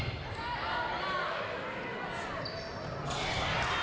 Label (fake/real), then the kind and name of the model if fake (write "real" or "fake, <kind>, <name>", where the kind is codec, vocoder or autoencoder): real